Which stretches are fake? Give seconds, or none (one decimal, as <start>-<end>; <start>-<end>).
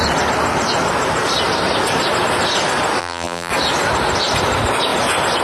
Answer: 3.0-3.5